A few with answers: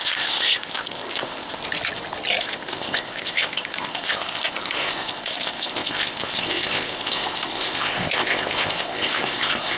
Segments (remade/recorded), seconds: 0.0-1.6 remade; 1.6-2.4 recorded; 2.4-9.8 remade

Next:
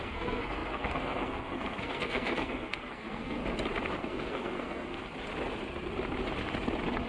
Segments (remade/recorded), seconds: 0.0-3.4 remade; 3.4-4.0 recorded; 4.0-5.0 remade; 5.0-7.1 recorded